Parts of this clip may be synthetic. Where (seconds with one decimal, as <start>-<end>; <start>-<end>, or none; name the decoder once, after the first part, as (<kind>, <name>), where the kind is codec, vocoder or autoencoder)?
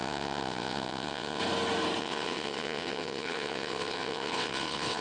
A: 0.0-1.4 (vocoder, WaveNeXt); 2.0-5.0